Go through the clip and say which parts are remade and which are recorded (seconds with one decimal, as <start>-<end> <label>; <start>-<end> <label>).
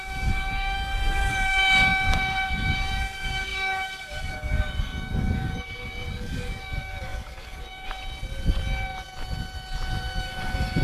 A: 0.0-8.0 remade; 8.0-10.2 recorded; 10.2-10.8 remade